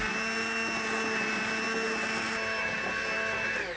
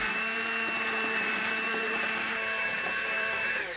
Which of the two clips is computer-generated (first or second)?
second